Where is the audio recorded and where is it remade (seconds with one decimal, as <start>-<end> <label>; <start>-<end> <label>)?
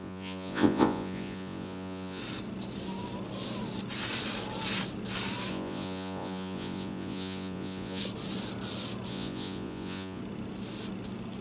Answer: 0.0-2.2 remade; 2.2-5.5 recorded; 5.5-8.0 remade; 8.0-9.1 recorded; 9.1-10.2 remade; 10.2-11.4 recorded